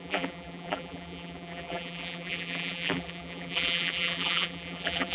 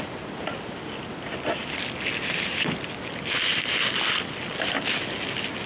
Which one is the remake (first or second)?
first